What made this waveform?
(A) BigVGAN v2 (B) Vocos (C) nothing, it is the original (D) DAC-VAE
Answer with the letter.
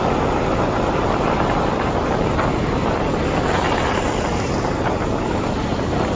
C